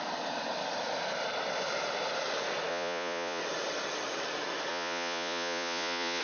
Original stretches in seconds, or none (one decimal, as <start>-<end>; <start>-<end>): 0.0-2.7; 3.4-4.7